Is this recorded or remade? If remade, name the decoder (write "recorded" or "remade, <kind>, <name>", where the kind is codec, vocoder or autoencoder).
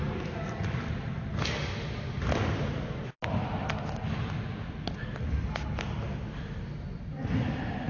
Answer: recorded